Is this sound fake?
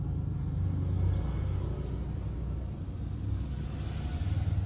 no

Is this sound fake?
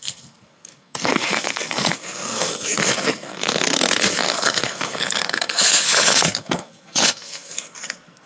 yes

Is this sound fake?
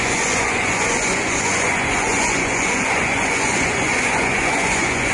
yes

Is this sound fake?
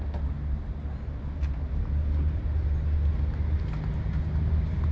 no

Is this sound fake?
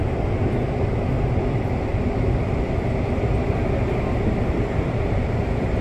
no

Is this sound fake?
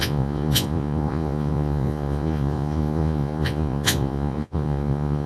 yes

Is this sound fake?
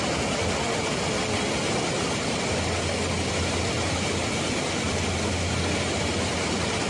no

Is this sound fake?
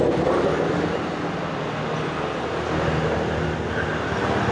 no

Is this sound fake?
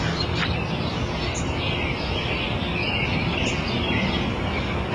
no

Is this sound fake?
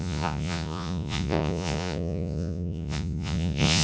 yes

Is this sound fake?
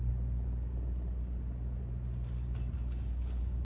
no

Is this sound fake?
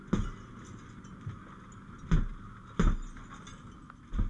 no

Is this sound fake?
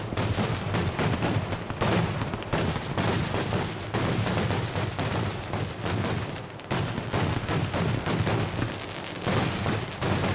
no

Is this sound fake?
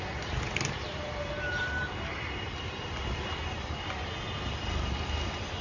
no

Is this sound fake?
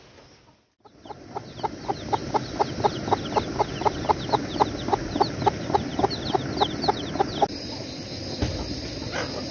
no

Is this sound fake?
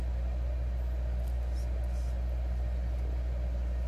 no